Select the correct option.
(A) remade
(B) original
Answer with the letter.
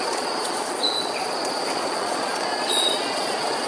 A